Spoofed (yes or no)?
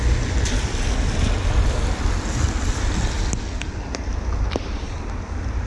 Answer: no